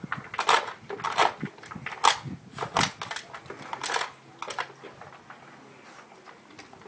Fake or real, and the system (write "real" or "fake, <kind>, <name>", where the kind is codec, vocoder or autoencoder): real